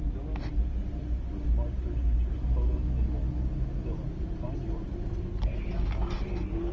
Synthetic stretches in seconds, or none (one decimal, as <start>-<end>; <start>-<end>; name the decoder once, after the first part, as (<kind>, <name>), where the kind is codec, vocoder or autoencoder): none